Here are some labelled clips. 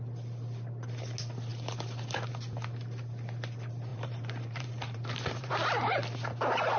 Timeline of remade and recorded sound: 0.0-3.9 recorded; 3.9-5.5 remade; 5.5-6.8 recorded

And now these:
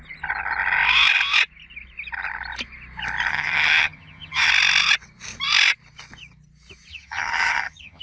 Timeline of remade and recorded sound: 0.0-3.3 recorded; 3.3-4.5 remade; 4.5-6.9 recorded; 6.9-8.0 remade

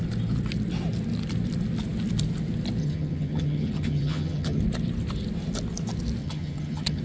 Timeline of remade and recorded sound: 0.0-2.8 recorded; 2.8-4.6 remade; 4.6-6.2 recorded; 6.2-7.0 remade

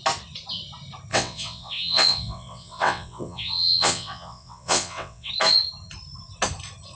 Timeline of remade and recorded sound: 0.0-1.1 recorded; 1.1-5.3 remade; 5.3-7.0 recorded

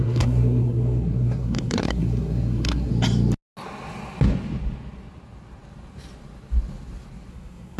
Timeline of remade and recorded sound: 0.0-2.9 remade; 2.9-7.3 recorded; 7.3-7.8 remade

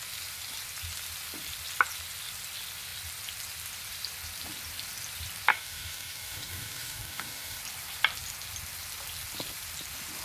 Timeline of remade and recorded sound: 0.0-5.5 recorded; 5.5-7.6 remade; 7.6-10.2 recorded

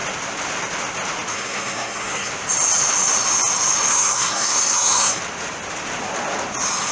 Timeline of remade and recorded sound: 0.0-1.3 recorded; 1.3-2.3 remade; 2.3-3.9 recorded; 3.9-5.2 remade; 5.2-6.9 recorded